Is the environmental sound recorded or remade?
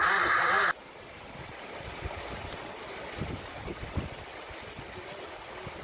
recorded